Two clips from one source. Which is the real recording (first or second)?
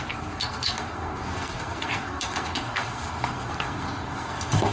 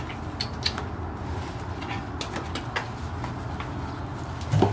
second